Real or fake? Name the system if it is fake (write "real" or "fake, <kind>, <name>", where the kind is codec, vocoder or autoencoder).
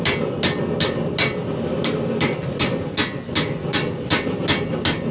real